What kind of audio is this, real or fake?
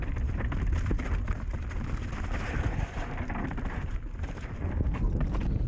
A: real